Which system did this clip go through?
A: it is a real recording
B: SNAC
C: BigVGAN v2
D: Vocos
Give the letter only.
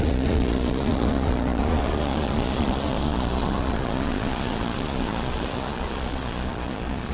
D